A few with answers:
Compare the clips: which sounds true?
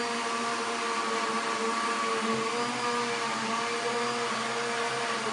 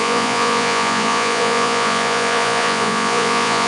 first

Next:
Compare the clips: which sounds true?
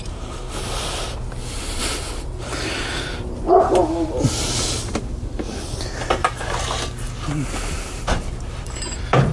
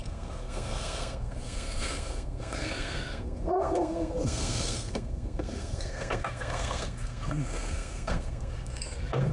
first